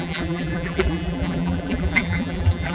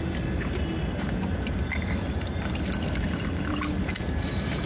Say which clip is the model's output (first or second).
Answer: first